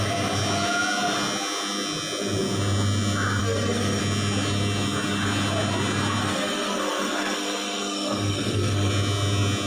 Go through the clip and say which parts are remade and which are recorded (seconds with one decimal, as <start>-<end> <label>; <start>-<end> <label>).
0.0-3.4 recorded; 3.4-4.0 remade; 4.0-6.2 recorded; 6.2-8.9 remade; 8.9-9.7 recorded